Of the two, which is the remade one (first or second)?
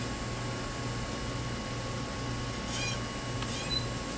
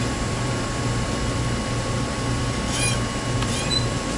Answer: second